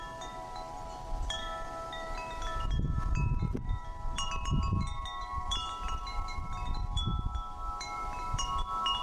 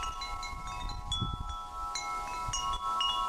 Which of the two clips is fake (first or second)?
first